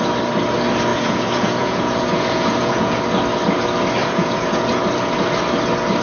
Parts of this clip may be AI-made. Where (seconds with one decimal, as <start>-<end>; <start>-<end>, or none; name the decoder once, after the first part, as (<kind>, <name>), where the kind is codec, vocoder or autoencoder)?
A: 0.9-3.0 (vocoder, Vocos); 4.0-4.8